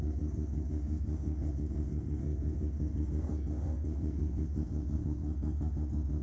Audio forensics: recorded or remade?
remade